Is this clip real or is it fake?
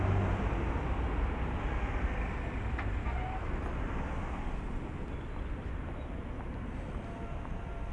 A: real